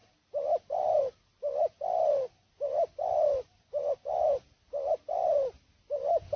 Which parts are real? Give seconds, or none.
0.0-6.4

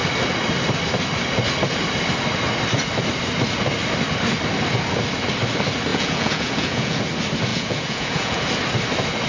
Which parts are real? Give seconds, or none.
0.0-5.9; 7.0-7.5; 8.4-9.3

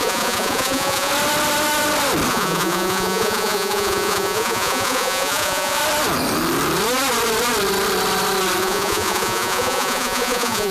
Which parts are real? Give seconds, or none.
1.1-2.3; 5.8-8.6

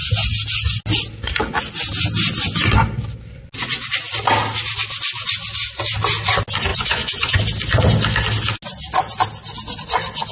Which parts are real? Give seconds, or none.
0.0-6.7; 7.4-10.3

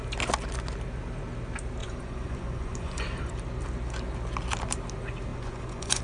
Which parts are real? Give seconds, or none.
0.0-1.8; 3.3-5.3

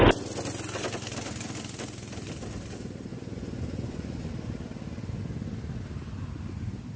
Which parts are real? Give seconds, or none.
0.0-3.1; 4.3-7.0

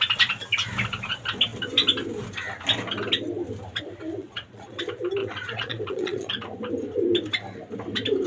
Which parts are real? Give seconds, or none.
0.0-4.2; 4.8-5.2; 6.3-8.3

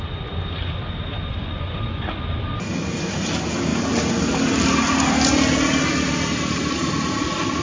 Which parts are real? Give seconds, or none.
0.0-1.3; 2.1-7.6